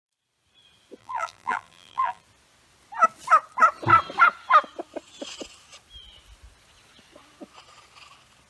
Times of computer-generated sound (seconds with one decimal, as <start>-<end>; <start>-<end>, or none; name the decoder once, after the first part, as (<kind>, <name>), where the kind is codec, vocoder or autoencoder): 1.0-2.2 (vocoder, BigVGAN v2)